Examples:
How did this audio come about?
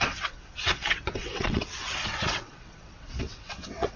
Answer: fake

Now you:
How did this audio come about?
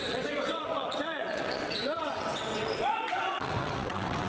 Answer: fake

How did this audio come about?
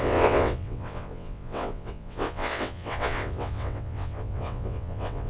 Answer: fake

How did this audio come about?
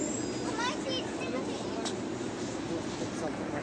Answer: real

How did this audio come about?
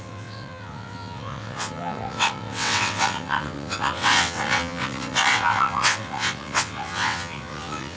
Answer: fake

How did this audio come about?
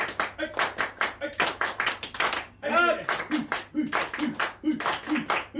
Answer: real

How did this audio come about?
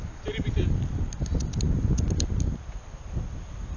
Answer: real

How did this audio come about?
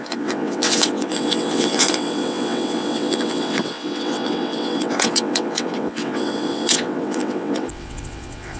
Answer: fake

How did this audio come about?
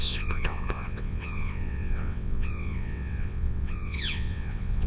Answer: fake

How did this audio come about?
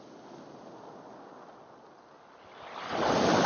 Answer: real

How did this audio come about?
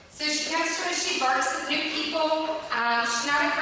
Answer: fake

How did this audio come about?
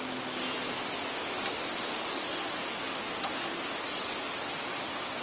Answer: real